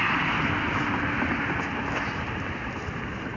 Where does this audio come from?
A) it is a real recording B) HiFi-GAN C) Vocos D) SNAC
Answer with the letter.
A